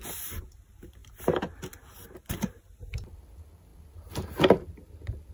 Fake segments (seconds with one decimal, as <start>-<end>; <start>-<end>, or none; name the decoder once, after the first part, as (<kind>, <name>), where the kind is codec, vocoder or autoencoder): none